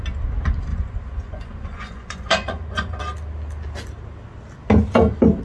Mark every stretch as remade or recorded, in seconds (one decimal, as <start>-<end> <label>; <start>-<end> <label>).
0.0-0.7 recorded; 0.7-3.0 remade; 3.0-5.4 recorded